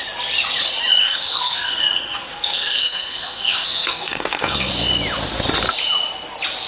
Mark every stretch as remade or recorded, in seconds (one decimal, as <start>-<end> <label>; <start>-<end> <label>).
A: 0.0-1.0 recorded; 1.0-4.7 remade; 4.7-6.7 recorded